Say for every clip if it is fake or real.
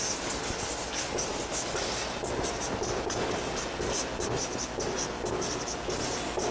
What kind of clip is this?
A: real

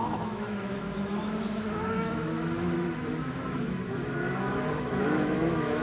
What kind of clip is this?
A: fake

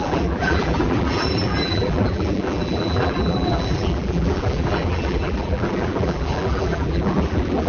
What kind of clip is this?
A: fake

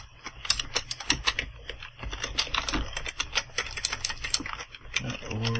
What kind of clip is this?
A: real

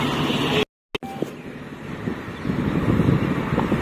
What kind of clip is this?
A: real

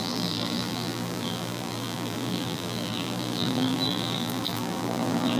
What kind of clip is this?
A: fake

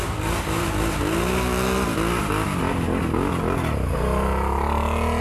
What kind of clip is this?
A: real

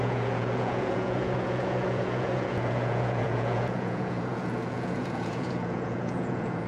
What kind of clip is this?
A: fake